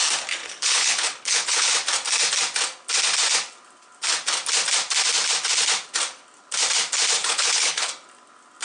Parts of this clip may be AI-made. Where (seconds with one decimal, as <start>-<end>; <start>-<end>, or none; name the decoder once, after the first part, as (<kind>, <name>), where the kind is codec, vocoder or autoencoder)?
0.4-1.7 (codec, HILCodec); 7.2-7.9